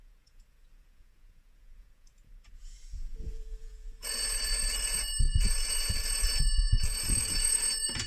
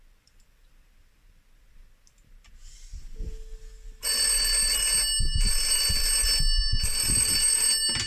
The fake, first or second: first